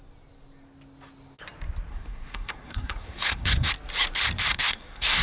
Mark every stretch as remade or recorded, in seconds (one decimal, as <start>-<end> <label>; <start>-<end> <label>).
0.0-1.9 recorded; 1.9-3.7 remade; 3.7-4.5 recorded; 4.5-5.2 remade